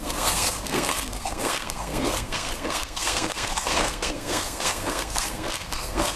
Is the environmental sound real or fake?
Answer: fake